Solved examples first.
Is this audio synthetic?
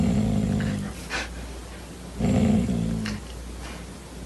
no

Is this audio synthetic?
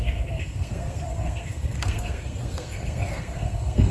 yes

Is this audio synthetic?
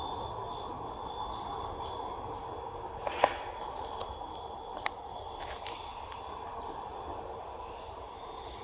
no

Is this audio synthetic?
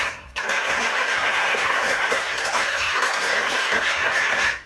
yes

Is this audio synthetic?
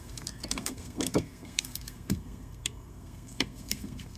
yes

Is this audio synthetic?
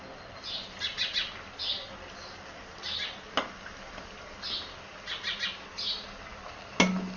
no